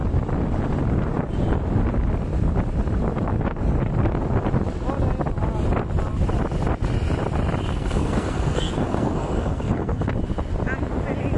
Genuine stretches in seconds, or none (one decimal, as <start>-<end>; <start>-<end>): 0.0-7.7; 10.0-11.4